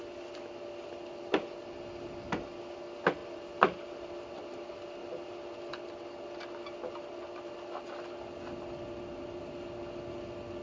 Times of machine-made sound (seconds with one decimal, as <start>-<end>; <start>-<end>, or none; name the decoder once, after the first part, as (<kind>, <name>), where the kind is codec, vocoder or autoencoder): 3.2-4.3 (vocoder, BigVGAN v2)